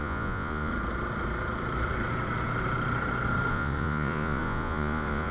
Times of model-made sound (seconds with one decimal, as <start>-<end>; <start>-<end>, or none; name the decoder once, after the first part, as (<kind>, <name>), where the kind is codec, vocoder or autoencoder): 0.0-0.7 (vocoder, Vocos); 3.5-5.3